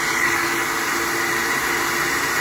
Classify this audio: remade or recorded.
recorded